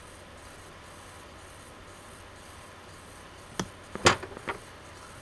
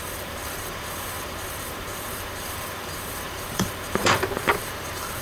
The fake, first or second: second